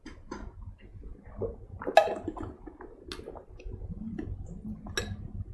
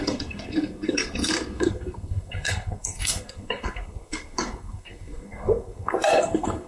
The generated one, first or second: second